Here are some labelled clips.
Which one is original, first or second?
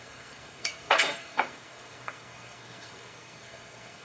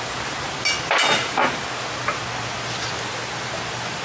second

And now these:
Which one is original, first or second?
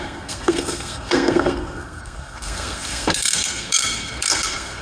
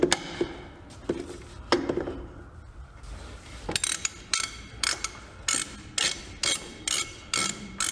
second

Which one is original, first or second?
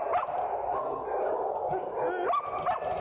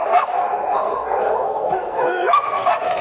first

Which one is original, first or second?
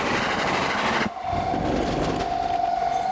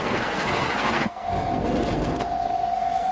first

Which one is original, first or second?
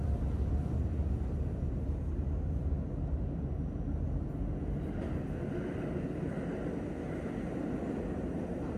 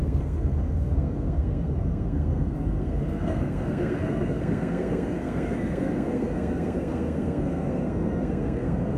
first